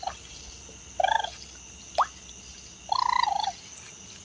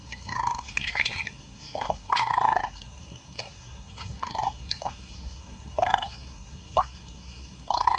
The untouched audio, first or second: first